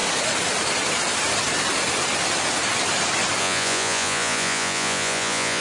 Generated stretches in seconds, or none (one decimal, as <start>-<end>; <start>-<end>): 3.4-5.6

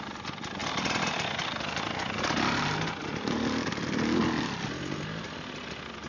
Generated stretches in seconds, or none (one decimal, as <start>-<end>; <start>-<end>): none

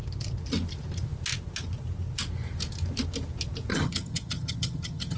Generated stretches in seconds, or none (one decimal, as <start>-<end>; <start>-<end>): 3.7-5.2

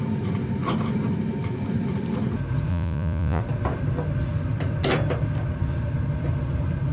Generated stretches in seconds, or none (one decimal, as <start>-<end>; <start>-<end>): 2.7-3.4

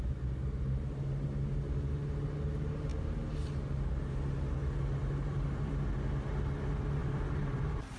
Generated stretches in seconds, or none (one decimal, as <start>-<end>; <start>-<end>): 5.0-5.7; 7.0-8.0

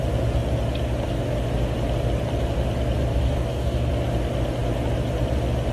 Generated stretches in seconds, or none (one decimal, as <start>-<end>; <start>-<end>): 3.1-3.9